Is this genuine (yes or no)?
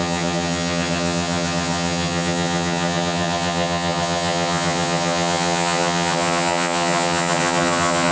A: no